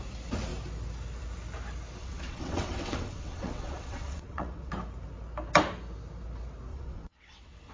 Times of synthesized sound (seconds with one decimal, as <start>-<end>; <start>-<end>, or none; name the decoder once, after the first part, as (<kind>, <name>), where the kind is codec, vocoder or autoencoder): 2.0-4.7 (vocoder, WaveNeXt); 6.7-7.7